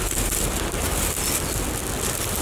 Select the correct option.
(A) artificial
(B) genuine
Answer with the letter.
B